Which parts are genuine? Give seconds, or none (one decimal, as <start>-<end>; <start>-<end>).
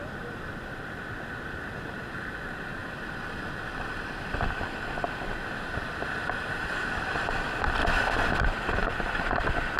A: 0.0-9.8